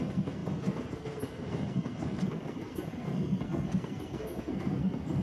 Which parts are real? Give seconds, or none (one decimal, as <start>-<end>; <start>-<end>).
none